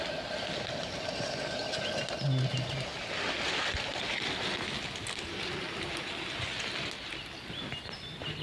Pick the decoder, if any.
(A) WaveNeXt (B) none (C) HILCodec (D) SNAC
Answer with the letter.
B